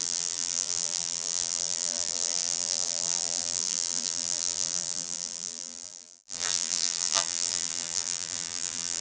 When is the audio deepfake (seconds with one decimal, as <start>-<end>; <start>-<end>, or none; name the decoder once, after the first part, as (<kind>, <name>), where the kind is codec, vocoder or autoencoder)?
0.0-9.0 (vocoder, BigVGAN v2)